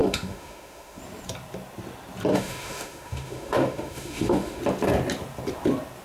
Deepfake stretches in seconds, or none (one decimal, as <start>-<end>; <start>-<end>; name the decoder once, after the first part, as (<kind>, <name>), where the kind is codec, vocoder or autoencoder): 0.0-1.0 (autoencoder, DAC-VAE); 2.3-4.6